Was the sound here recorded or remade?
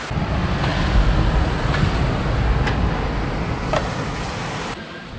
recorded